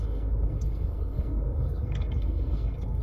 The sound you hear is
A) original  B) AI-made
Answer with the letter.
B